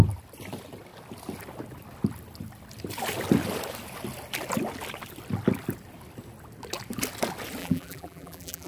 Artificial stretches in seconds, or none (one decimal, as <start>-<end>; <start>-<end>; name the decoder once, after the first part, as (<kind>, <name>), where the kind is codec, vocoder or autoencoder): 7.6-8.7 (vocoder, BigVGAN v2)